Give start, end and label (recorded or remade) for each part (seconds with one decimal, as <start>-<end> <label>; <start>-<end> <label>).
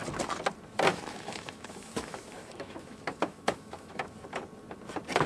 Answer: 0.0-0.9 recorded; 0.9-4.1 remade; 4.1-5.3 recorded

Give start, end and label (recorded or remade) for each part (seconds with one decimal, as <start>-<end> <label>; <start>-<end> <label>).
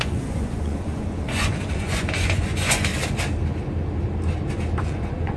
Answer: 0.0-2.9 remade; 2.9-4.8 recorded; 4.8-5.4 remade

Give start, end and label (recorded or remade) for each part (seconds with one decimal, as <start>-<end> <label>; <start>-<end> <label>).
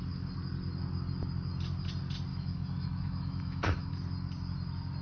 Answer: 0.0-2.3 recorded; 2.3-3.9 remade; 3.9-5.0 recorded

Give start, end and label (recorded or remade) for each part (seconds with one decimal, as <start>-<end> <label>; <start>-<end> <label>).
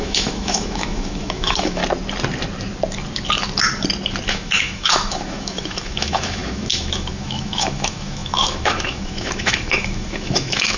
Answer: 0.0-1.8 remade; 1.8-4.3 recorded; 4.3-10.8 remade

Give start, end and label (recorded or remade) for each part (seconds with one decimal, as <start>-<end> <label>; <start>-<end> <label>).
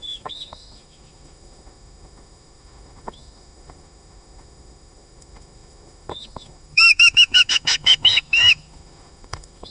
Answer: 0.0-9.7 remade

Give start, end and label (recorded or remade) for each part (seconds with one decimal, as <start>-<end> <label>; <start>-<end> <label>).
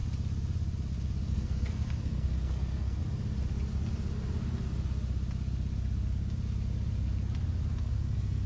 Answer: 0.0-1.3 recorded; 1.3-3.0 remade; 3.0-7.8 recorded; 7.8-8.5 remade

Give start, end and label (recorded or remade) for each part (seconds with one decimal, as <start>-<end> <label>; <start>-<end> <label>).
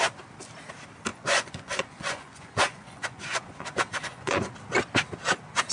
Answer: 0.0-1.1 recorded; 1.1-4.5 remade; 4.5-5.7 recorded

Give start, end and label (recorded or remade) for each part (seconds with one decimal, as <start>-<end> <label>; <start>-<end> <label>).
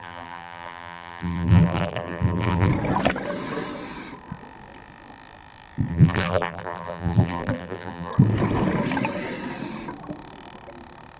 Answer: 0.0-2.7 remade; 2.7-5.9 recorded; 5.9-8.1 remade; 8.1-11.2 recorded